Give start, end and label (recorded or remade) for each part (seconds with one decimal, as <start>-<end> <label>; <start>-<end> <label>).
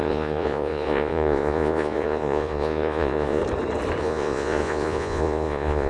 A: 0.0-3.4 remade; 3.4-4.0 recorded; 4.0-5.9 remade